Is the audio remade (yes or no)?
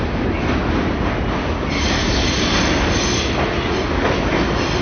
no